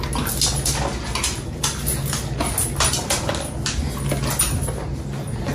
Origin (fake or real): real